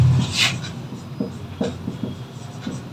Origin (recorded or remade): recorded